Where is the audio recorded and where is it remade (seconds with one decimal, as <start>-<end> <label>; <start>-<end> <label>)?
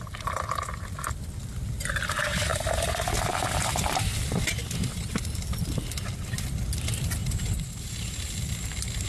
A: 0.0-9.1 recorded